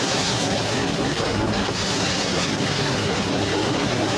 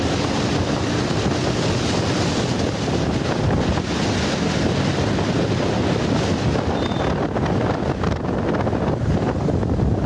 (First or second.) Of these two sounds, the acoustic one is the second